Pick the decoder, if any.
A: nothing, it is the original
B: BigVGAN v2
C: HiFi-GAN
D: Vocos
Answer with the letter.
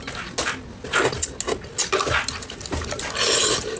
A